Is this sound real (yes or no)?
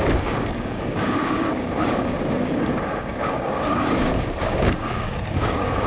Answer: no